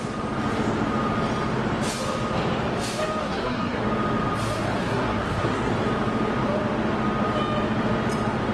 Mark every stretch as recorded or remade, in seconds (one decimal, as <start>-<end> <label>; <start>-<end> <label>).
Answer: 0.0-3.2 recorded; 3.2-3.8 remade; 3.8-4.8 recorded; 4.8-5.7 remade; 5.7-8.5 recorded

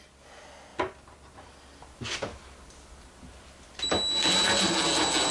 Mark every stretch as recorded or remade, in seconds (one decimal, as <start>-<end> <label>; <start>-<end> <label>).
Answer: 0.0-5.3 recorded

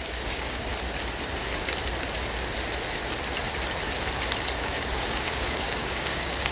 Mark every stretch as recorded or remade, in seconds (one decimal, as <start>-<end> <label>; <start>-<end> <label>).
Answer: 0.0-0.7 remade; 0.7-4.6 recorded; 4.6-6.5 remade